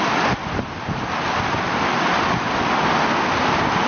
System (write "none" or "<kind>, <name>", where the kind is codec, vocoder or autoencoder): none